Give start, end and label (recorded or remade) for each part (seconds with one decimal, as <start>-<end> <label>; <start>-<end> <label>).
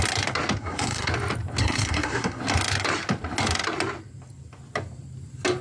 0.0-0.6 recorded; 0.6-1.1 remade; 1.1-1.6 recorded; 1.6-2.4 remade; 2.4-5.6 recorded